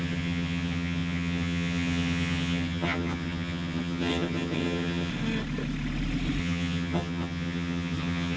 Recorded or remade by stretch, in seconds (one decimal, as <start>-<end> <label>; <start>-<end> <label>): 0.0-5.1 remade; 5.1-6.4 recorded; 6.4-8.4 remade